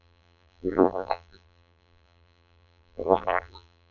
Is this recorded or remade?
remade